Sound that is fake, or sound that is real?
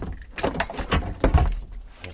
real